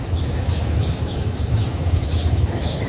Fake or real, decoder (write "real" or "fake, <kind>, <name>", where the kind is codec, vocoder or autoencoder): fake, autoencoder, DAC-VAE